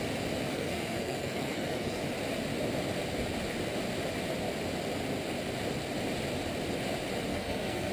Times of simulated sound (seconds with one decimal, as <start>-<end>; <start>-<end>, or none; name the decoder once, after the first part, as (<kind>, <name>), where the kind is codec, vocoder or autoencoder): 0.5-2.0 (codec, SNAC); 7.3-7.9